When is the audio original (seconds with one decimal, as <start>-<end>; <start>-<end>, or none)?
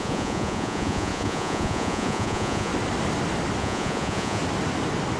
2.7-3.6; 4.4-5.2